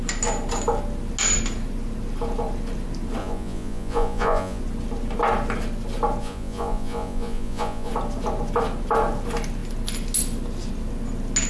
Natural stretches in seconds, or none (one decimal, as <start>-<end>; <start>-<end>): 0.0-3.2; 4.6-6.2; 7.9-11.5